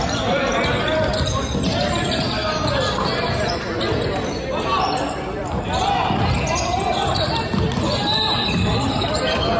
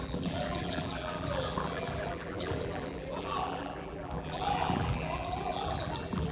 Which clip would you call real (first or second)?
first